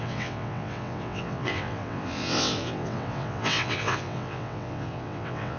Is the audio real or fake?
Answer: fake